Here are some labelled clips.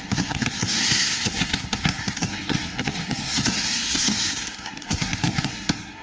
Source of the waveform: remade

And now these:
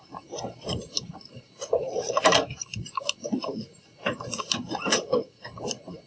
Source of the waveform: remade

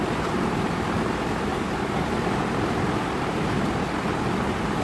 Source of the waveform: remade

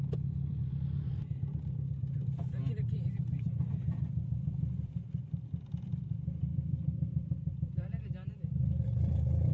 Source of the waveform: remade